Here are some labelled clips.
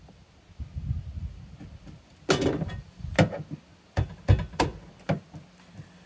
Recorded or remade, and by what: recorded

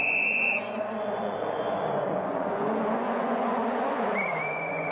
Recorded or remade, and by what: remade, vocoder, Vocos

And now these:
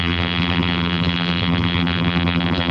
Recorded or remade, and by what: remade, vocoder, BigVGAN v2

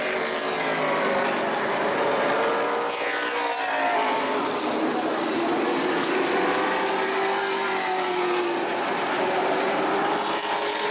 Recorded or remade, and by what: recorded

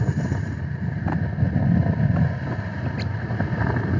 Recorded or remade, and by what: recorded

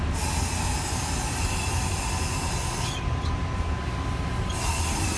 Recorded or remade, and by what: recorded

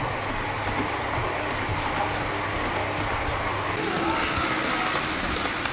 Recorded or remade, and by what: recorded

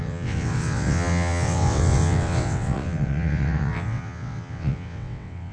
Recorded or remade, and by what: remade, vocoder, WaveNeXt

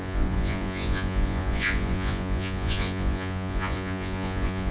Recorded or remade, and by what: remade, vocoder, Vocos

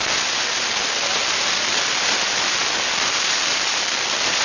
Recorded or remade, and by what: recorded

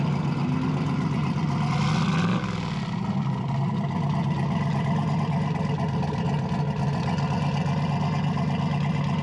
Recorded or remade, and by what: recorded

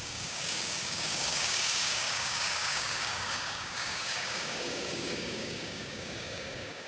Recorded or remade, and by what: remade, codec, DAC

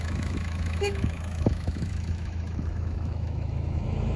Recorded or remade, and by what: remade, autoencoder, DAC-VAE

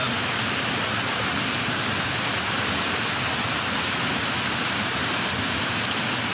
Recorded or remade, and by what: recorded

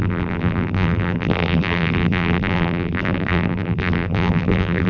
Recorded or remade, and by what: remade, vocoder, BigVGAN v2